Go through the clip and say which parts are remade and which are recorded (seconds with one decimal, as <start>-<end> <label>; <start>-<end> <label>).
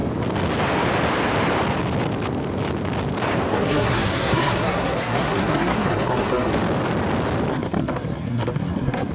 0.0-3.5 recorded; 3.5-6.5 remade; 6.5-7.5 recorded; 7.5-9.1 remade